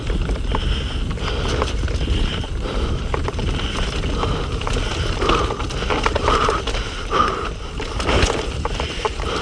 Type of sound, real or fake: real